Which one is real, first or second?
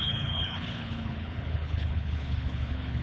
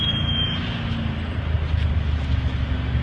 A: second